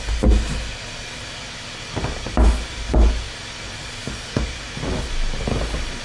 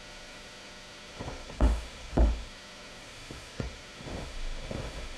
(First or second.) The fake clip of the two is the second